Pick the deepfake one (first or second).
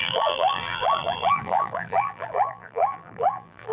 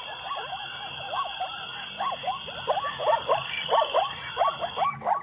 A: first